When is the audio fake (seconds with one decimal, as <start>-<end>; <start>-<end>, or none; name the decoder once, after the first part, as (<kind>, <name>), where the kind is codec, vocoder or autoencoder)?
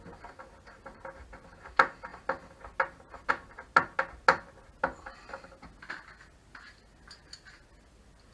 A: none